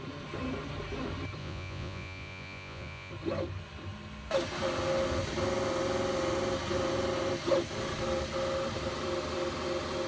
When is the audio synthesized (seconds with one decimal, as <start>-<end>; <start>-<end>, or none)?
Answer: 1.4-3.1